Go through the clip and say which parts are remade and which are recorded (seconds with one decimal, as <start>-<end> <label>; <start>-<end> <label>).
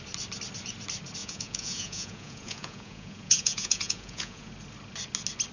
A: 0.0-1.2 recorded; 1.2-4.5 remade; 4.5-5.5 recorded